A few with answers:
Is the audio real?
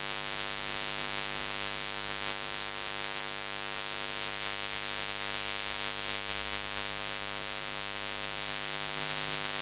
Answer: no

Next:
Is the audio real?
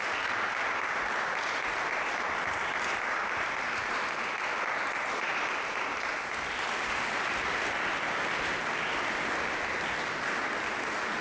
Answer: yes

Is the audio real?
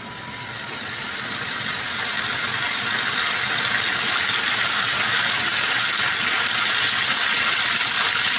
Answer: yes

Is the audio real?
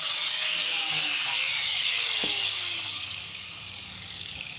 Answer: no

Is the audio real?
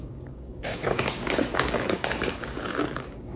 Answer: no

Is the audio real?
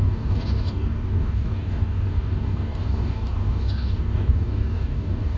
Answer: no